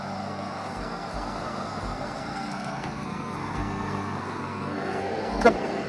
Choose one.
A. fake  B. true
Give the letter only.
A